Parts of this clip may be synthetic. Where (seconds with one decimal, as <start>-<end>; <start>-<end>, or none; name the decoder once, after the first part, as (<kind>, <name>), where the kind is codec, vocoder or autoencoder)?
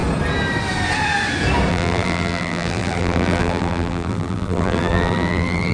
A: 1.7-5.7 (vocoder, BigVGAN v2)